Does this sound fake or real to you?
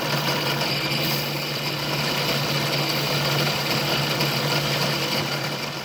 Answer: real